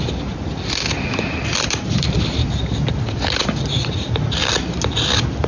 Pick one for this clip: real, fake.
real